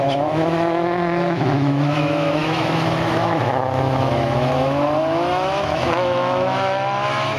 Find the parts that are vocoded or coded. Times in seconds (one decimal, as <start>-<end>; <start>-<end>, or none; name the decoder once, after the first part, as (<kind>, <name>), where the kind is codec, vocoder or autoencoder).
0.0-7.4 (autoencoder, DAC-VAE)